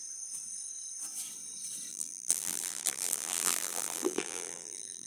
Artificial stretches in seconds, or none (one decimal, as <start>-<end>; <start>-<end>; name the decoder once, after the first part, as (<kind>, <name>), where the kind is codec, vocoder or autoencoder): 1.9-5.1 (vocoder, BigVGAN v2)